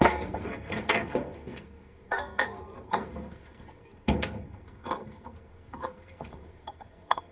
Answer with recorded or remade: remade